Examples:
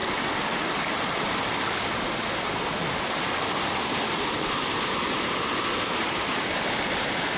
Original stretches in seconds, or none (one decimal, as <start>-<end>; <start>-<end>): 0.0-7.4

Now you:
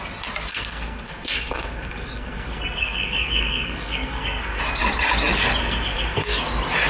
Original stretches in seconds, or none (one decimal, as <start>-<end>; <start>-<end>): 0.0-0.5; 4.6-5.6; 6.4-6.9

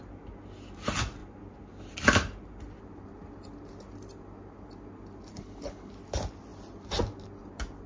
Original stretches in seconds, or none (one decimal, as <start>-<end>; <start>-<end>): 0.0-5.3; 5.9-7.9

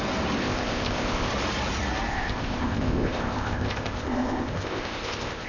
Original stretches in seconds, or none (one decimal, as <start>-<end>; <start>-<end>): 0.0-0.4; 1.3-2.1

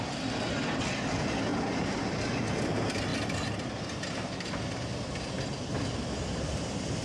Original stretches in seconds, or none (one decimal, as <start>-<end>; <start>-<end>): 0.0-7.0